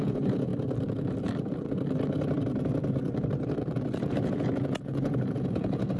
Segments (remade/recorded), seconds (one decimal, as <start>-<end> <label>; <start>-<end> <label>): 0.0-0.5 remade; 0.5-4.1 recorded; 4.1-6.0 remade